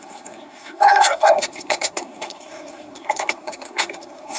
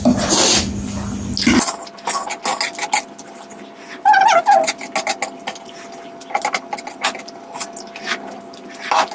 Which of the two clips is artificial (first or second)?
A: first